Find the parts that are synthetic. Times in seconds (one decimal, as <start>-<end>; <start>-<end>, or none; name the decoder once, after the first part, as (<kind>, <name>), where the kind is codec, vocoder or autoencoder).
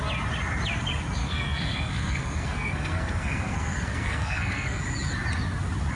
1.2-4.8 (codec, SNAC)